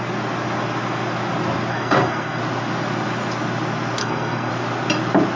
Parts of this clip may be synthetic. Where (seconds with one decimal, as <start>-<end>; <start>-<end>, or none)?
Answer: 1.7-2.4; 4.0-4.5